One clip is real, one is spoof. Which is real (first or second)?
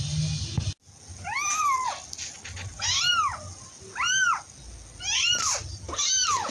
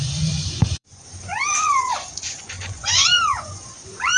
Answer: first